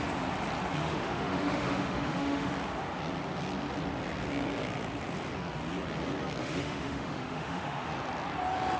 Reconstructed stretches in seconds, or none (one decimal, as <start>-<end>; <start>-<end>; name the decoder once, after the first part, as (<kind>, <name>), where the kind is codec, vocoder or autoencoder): 0.8-2.5 (autoencoder, DAC-VAE); 6.4-7.9